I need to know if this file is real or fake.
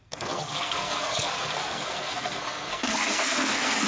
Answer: fake